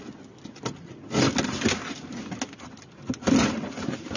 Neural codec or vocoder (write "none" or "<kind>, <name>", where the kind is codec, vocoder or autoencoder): none